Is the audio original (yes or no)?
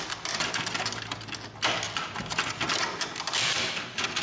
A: yes